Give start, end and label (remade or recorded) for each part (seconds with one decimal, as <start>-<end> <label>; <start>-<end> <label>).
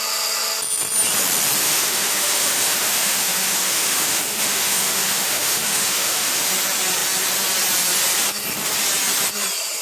0.0-1.6 recorded; 1.6-6.5 remade; 6.5-9.8 recorded